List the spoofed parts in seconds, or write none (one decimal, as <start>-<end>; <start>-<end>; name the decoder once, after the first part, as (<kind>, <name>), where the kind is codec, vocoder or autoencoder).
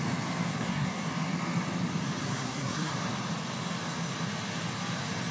0.5-1.1 (codec, SNAC); 2.2-2.9